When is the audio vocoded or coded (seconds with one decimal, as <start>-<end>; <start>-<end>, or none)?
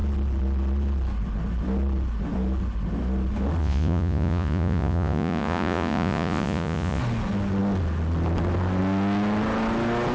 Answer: 3.6-7.0